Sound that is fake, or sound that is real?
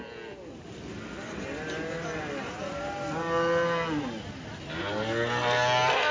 real